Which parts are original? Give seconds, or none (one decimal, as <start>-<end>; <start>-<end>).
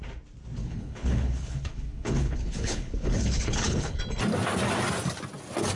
0.0-0.6; 4.0-5.7